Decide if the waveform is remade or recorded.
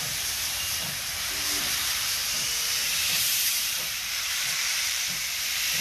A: remade